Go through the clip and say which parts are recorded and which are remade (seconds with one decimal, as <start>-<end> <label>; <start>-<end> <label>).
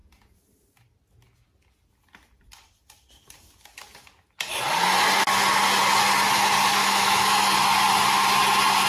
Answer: 0.0-6.8 recorded; 6.8-7.5 remade; 7.5-8.9 recorded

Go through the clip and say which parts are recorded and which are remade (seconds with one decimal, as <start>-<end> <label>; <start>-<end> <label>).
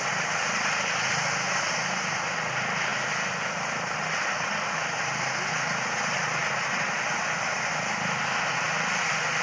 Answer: 0.0-9.4 recorded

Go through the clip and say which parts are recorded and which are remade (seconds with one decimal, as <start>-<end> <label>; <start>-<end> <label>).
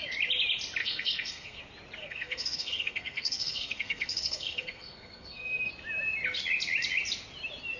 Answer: 0.0-0.8 recorded; 0.8-1.6 remade; 1.6-2.0 recorded; 2.0-5.7 remade; 5.7-7.8 recorded